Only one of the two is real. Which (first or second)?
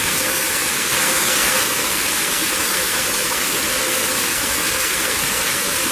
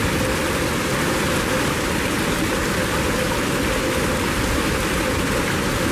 second